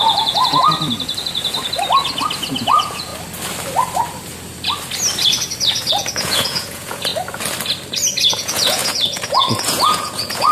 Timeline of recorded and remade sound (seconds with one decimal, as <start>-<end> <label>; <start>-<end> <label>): 0.0-0.6 remade; 0.6-2.5 recorded; 2.5-3.1 remade; 3.1-5.9 recorded; 5.9-7.1 remade; 7.1-8.3 recorded; 8.3-10.5 remade